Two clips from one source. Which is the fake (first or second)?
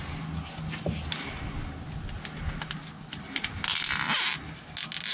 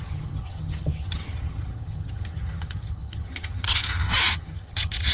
second